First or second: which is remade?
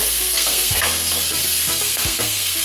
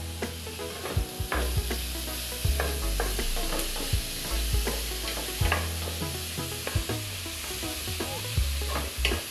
first